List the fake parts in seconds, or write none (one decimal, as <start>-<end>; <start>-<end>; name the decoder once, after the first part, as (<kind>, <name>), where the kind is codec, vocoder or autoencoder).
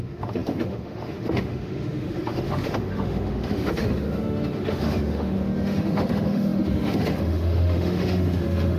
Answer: 0.0-8.8 (autoencoder, DAC-VAE)